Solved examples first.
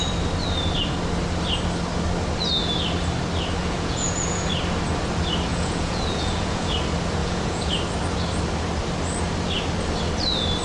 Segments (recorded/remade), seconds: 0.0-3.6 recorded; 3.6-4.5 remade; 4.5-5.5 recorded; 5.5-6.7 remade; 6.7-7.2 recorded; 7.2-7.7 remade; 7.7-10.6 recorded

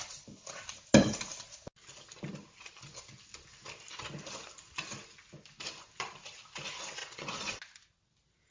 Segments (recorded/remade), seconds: 0.0-7.0 recorded; 7.0-7.6 remade; 7.6-8.5 recorded

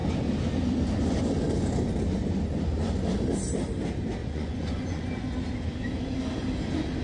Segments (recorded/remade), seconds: 0.0-4.2 recorded; 4.2-5.1 remade; 5.1-7.0 recorded

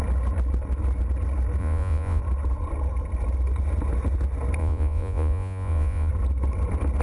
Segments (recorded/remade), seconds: 0.0-1.6 recorded; 1.6-2.2 remade; 2.2-4.6 recorded; 4.6-6.1 remade; 6.1-7.0 recorded

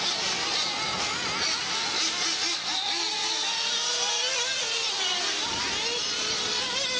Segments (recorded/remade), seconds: 0.0-7.0 recorded

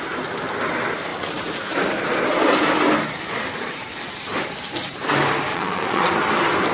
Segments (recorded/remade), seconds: 0.0-5.5 recorded; 5.5-6.1 remade; 6.1-6.7 recorded

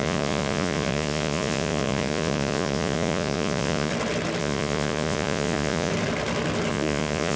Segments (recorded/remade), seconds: 0.0-3.9 remade; 3.9-4.4 recorded; 4.4-5.9 remade; 5.9-6.7 recorded; 6.7-7.4 remade

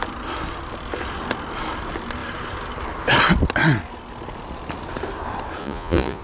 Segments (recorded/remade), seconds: 0.0-5.6 recorded; 5.6-6.2 remade